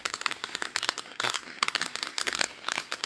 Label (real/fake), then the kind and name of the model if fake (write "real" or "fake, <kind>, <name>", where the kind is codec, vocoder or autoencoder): fake, codec, SNAC